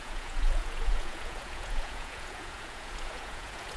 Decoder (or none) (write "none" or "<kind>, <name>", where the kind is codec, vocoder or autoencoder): vocoder, Vocos